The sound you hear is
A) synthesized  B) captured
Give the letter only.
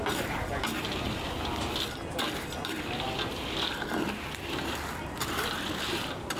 A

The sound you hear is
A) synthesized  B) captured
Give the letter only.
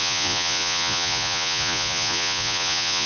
A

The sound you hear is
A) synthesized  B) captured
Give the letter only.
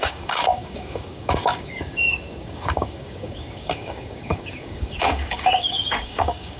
A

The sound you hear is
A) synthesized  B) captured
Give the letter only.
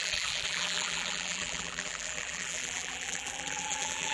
A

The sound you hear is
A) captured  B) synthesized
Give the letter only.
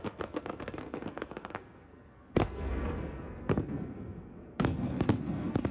B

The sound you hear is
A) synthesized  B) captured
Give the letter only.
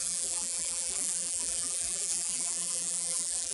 A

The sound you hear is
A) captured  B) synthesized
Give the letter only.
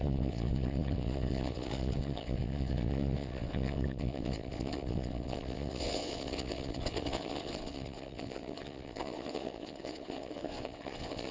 B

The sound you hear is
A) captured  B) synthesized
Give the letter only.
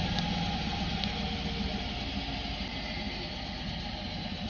A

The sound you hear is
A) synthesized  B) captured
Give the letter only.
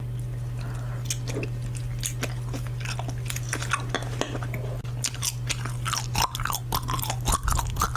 B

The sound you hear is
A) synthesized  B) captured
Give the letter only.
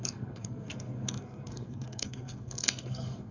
A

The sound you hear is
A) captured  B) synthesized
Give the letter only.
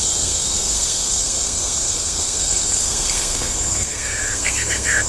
B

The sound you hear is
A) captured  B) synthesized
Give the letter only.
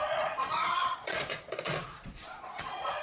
B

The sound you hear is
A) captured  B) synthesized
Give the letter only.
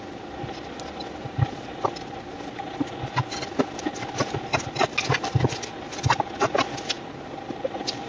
A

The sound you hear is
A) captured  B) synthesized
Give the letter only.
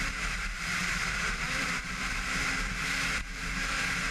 B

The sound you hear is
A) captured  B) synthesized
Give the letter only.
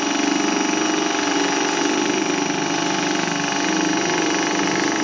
A